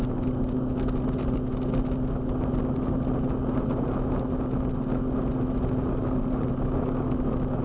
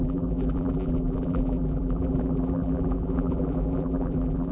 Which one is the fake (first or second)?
second